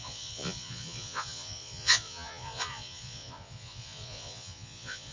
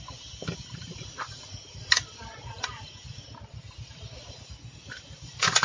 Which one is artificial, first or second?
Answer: first